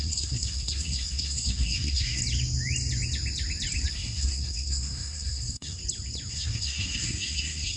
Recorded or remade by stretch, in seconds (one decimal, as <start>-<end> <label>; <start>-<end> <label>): 0.0-2.2 remade; 2.2-3.9 recorded; 3.9-5.8 remade; 5.8-6.3 recorded; 6.3-7.8 remade